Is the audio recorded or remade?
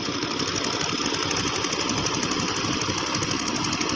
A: recorded